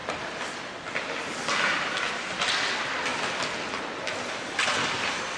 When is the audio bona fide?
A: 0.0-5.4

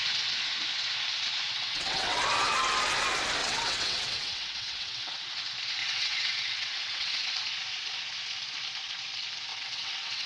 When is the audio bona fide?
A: 0.0-1.5; 2.2-3.4; 5.3-5.8; 7.2-9.5